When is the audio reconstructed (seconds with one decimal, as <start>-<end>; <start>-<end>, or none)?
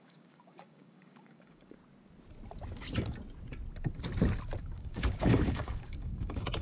0.0-1.8; 4.6-6.6